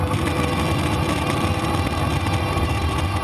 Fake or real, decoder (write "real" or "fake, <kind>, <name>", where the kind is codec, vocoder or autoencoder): fake, vocoder, BigVGAN v2